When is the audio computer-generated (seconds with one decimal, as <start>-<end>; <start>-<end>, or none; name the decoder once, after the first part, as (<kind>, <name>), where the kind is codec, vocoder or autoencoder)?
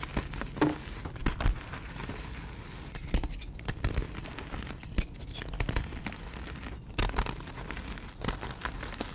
none